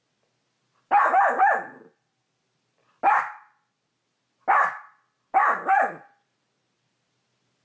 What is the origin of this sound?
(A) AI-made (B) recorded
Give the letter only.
B